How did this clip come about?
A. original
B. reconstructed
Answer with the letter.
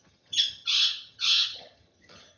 B